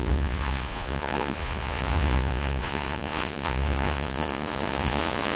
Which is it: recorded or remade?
remade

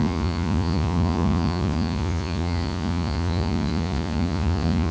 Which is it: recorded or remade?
remade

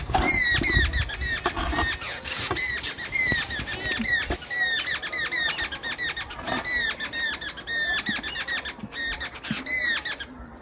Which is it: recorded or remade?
recorded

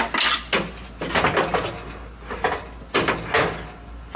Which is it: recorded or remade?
recorded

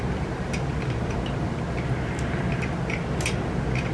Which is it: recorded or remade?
recorded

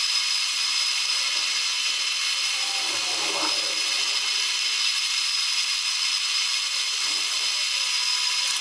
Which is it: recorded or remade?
recorded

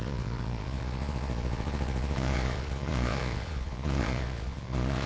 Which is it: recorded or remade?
remade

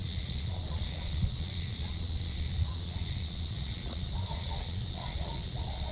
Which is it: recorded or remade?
remade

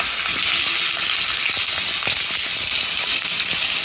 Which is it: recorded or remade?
recorded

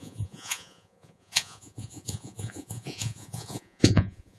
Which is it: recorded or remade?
remade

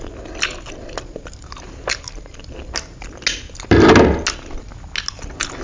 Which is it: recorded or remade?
recorded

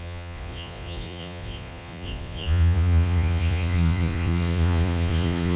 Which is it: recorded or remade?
remade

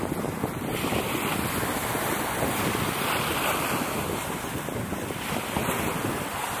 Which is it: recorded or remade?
recorded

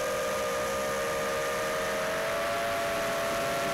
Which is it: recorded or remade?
recorded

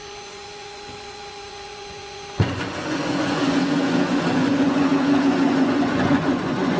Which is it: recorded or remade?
remade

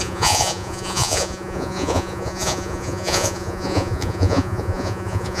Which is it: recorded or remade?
remade